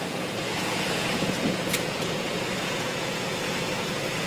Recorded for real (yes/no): no